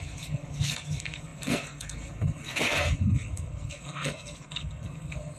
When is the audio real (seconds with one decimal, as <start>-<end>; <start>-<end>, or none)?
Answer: none